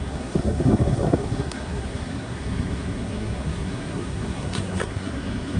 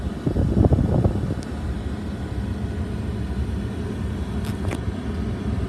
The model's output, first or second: first